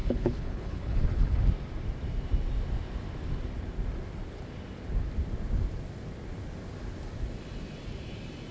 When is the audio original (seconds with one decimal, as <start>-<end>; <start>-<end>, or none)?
1.4-8.5